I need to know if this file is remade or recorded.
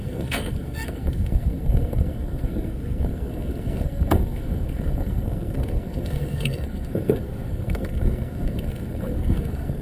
remade